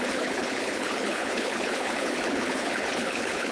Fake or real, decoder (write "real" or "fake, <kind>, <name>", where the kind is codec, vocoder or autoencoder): fake, codec, HILCodec